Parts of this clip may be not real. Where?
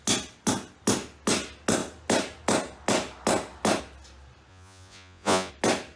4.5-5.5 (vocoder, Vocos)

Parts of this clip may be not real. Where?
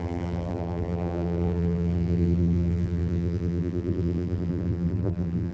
0.0-5.5 (vocoder, BigVGAN v2)